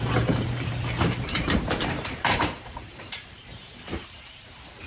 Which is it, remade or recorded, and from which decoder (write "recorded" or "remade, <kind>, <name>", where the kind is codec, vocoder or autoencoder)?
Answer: remade, vocoder, BigVGAN v2